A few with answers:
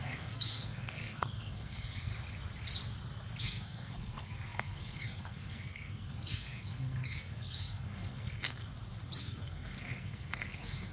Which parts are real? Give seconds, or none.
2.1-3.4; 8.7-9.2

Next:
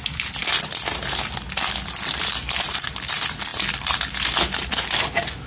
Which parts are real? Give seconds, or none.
0.0-5.5

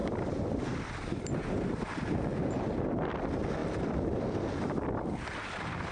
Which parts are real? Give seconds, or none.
1.2-2.3; 3.1-3.6; 4.2-5.9

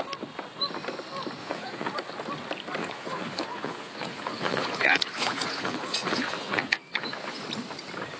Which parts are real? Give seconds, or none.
0.0-1.4; 1.9-2.8; 7.4-8.2

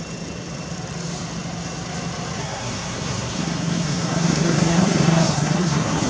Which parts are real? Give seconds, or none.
0.0-2.4

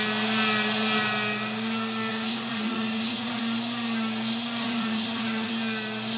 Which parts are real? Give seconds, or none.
0.0-2.1; 3.4-4.6; 5.5-6.2